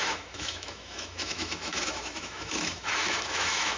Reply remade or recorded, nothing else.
remade